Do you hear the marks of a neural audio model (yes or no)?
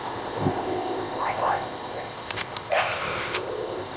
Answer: yes